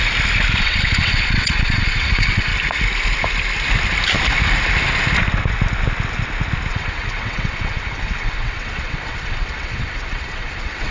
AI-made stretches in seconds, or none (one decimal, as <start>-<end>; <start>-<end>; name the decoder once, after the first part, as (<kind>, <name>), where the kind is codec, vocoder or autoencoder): 0.6-2.5 (vocoder, WaveNeXt); 6.7-10.9